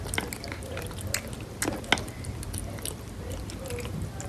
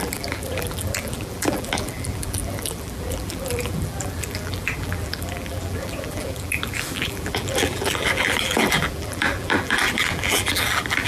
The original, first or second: first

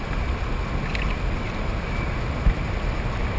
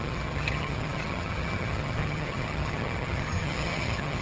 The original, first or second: first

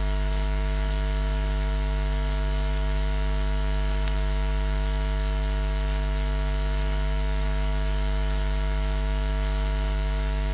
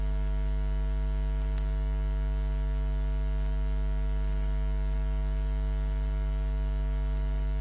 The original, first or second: second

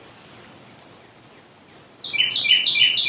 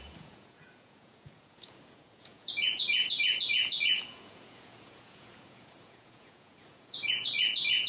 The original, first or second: first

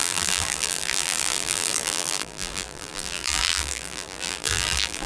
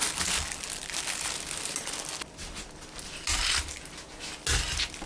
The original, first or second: second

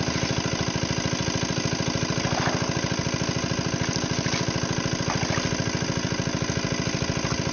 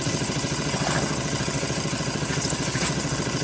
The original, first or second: first